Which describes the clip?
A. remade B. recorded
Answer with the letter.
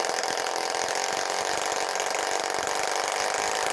B